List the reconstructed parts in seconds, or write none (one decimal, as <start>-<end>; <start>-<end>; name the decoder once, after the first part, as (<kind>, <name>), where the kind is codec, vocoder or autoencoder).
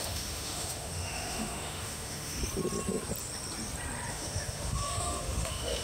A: 0.0-2.4 (autoencoder, DAC-VAE); 4.1-5.8